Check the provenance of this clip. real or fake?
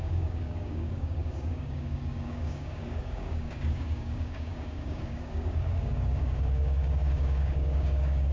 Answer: fake